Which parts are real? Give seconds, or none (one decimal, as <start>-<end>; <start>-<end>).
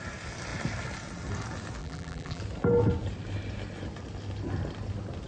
0.0-1.8; 2.4-5.3